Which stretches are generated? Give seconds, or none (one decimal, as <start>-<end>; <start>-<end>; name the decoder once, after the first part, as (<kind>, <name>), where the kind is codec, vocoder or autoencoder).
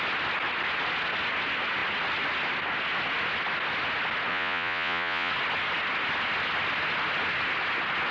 4.3-5.3 (vocoder, Vocos)